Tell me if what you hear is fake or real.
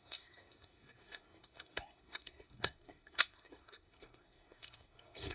fake